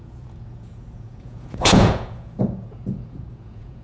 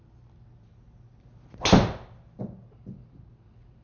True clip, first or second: second